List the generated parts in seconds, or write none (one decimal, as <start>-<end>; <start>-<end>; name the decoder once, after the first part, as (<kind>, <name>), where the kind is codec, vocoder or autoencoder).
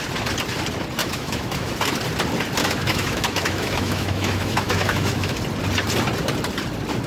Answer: 1.0-1.7 (autoencoder, DAC-VAE); 2.6-5.4